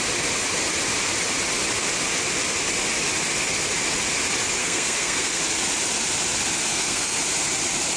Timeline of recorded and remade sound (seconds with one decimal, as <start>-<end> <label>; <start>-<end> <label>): 0.0-4.6 recorded; 4.6-5.4 remade; 5.4-6.7 recorded; 6.7-7.2 remade; 7.2-8.0 recorded